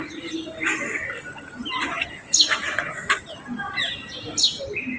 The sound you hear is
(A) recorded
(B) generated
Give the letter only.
A